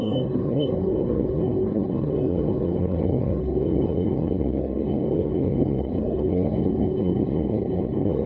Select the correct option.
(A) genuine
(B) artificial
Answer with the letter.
B